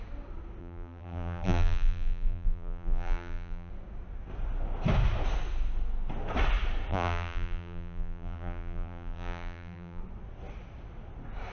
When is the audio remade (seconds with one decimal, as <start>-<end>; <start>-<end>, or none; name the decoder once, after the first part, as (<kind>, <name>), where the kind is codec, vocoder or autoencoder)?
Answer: 0.6-3.7 (vocoder, BigVGAN v2); 6.9-10.0